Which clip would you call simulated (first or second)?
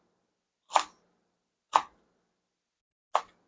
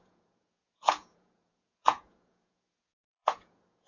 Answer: second